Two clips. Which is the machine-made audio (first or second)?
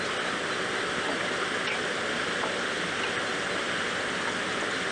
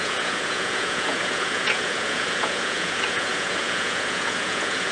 second